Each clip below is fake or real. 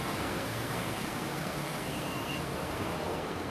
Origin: fake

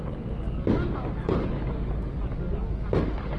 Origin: fake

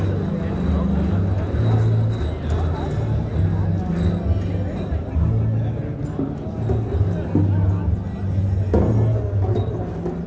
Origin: real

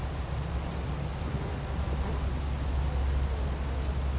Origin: real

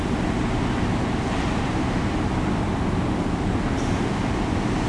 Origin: real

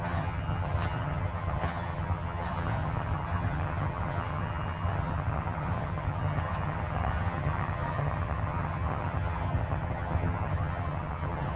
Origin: fake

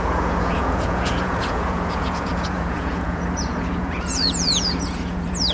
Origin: fake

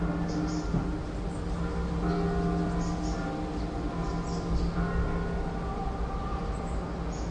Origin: real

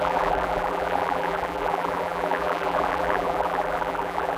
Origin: fake